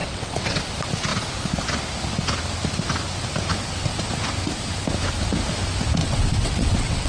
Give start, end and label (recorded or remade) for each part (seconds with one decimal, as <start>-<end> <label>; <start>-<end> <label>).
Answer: 0.0-0.6 remade; 0.6-6.0 recorded; 6.0-7.1 remade